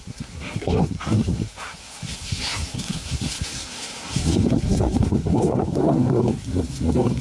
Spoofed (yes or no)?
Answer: yes